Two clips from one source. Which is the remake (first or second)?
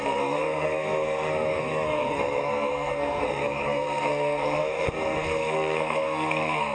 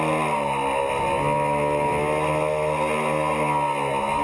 first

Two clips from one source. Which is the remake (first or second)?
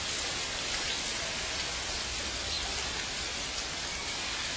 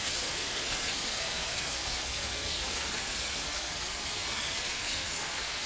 second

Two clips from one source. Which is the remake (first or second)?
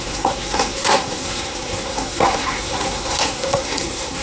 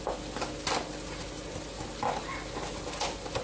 first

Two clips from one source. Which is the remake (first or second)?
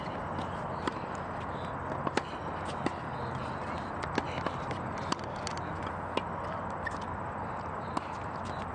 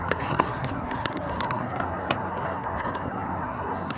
second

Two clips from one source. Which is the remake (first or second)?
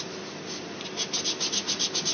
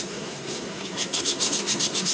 second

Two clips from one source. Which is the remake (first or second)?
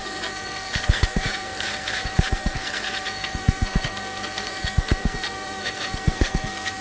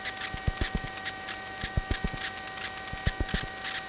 first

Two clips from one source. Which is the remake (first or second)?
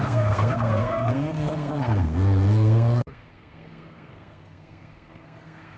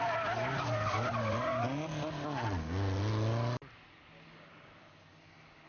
first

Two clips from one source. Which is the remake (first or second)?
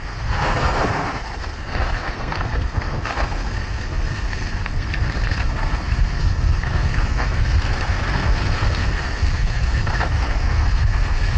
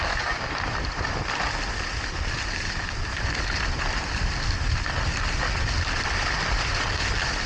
first